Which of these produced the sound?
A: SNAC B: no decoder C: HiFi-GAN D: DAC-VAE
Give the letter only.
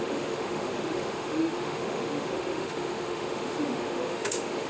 D